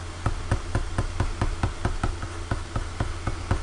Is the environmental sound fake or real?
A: real